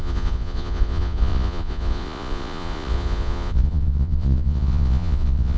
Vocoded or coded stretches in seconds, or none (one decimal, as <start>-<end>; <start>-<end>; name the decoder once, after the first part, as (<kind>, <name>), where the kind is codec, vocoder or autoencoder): 0.0-5.6 (vocoder, Vocos)

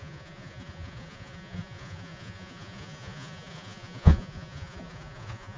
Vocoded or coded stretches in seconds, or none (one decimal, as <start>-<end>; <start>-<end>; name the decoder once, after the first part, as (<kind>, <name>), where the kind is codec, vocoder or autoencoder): 0.0-5.6 (vocoder, Vocos)

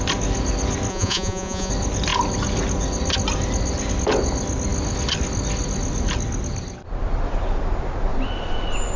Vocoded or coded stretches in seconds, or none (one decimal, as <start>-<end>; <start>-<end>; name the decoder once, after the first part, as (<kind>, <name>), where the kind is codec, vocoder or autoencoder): 0.9-1.7 (vocoder, Vocos)

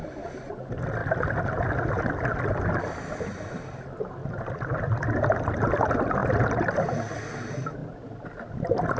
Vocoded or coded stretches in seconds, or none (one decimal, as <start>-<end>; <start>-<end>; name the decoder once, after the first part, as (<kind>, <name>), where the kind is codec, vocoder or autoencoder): none

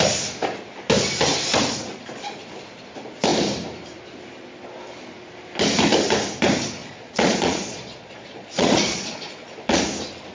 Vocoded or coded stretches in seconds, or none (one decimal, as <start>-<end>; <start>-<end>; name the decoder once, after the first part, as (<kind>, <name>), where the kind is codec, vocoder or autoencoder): 6.8-9.8 (vocoder, Vocos)

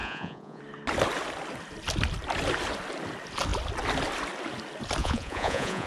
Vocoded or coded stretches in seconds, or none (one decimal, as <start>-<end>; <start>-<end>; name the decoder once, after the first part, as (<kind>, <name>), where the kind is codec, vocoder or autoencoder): 0.0-0.6 (vocoder, Vocos); 5.0-5.9

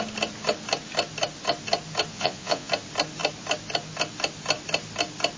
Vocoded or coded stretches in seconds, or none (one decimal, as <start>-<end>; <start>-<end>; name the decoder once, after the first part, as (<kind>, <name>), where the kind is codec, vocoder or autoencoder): 2.1-2.7 (vocoder, Vocos)

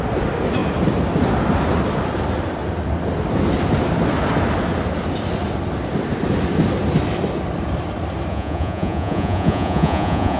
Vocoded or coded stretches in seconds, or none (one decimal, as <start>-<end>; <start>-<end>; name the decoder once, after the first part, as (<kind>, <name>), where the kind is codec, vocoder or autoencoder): 8.3-10.4 (vocoder, Vocos)